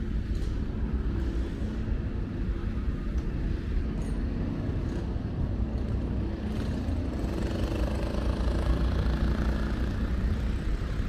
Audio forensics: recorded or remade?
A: recorded